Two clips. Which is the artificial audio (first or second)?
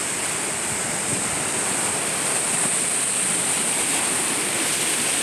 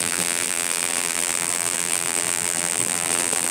second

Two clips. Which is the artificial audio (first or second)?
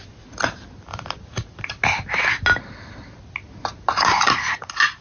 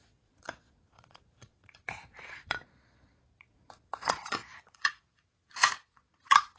second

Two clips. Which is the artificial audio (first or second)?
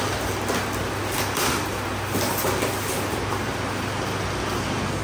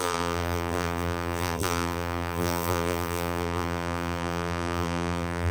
second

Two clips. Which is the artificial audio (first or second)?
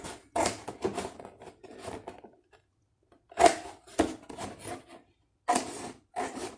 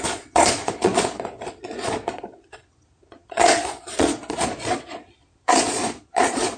second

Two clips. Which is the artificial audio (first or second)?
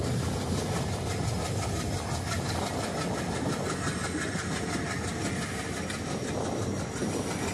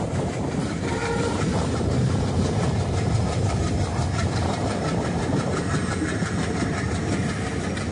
second